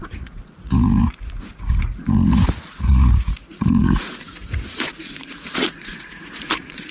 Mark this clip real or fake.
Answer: fake